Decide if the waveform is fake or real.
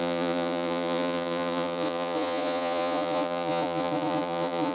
fake